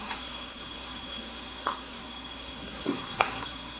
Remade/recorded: remade